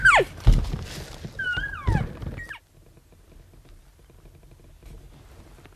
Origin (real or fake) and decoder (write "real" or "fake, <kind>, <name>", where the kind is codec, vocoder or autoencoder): real